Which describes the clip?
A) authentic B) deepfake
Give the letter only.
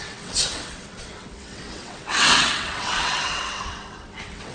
B